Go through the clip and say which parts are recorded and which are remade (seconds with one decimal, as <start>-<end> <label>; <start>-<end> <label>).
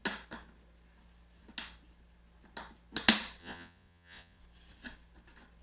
0.0-3.4 recorded; 3.4-4.4 remade; 4.4-5.6 recorded